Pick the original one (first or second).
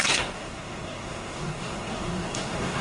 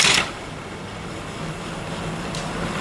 second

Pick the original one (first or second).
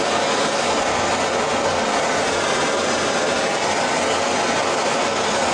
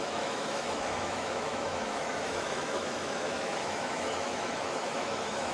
first